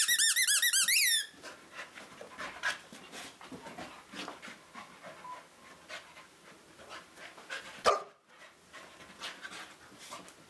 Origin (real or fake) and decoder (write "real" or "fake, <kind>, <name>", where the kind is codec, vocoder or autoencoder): real